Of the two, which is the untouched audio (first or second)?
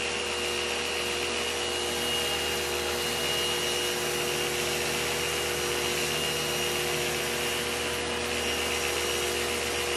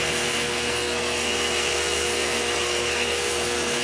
first